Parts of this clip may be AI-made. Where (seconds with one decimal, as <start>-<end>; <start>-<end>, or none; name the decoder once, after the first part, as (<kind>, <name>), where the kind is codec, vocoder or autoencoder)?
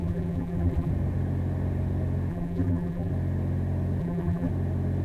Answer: 0.0-0.9 (vocoder, BigVGAN v2); 2.3-3.1; 4.0-4.5